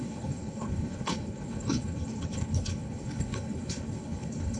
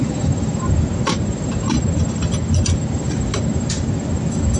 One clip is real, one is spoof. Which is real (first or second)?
second